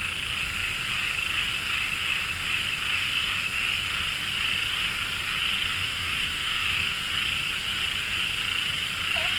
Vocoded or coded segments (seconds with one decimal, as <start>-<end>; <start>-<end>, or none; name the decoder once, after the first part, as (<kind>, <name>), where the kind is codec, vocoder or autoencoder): 5.7-7.0 (autoencoder, DAC-VAE)